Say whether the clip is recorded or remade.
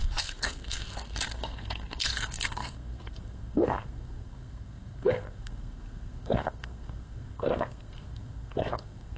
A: remade